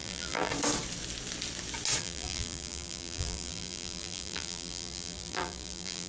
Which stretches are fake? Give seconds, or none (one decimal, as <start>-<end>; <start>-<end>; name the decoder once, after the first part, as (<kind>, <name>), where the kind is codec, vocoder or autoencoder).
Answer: 0.0-0.5 (vocoder, BigVGAN v2); 2.0-6.1